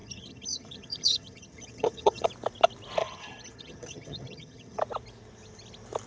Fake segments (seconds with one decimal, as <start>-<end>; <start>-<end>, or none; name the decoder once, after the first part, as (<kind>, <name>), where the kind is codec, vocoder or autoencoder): 0.0-2.3 (vocoder, HiFi-GAN); 3.0-4.8